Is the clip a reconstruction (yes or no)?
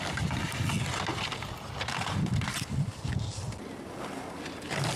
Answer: no